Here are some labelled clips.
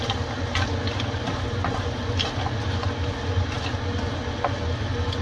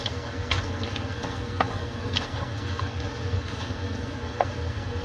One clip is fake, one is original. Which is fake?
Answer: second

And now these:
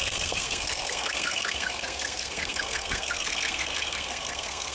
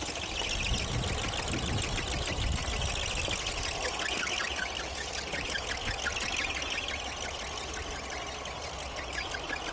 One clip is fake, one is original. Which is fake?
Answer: first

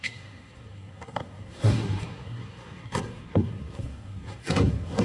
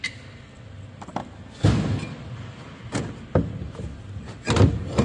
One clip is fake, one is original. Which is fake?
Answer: first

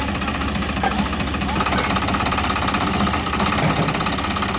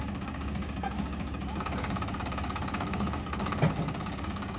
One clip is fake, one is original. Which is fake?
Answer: second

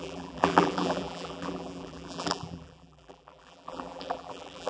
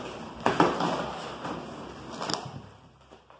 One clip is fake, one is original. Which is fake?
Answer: first